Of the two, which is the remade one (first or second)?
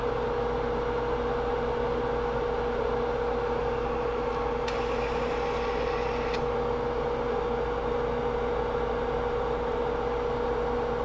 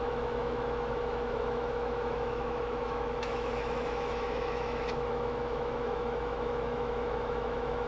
second